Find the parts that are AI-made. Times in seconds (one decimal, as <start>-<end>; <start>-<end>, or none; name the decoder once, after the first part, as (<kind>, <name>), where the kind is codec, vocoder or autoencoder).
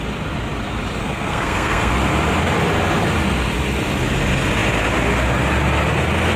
1.0-1.9 (codec, SNAC)